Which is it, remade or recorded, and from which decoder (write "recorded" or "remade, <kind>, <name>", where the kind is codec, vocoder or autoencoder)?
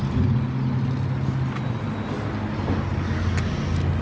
recorded